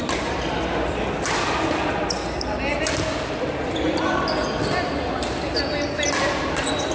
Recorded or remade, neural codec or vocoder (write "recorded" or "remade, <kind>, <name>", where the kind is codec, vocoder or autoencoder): recorded